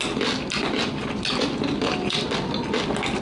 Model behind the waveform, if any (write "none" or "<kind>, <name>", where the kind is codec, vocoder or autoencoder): none